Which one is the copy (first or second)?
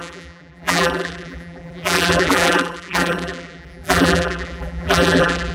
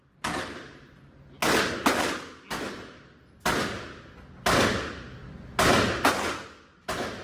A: first